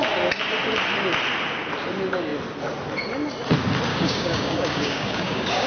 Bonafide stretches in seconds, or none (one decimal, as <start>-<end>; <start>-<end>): 0.0-3.9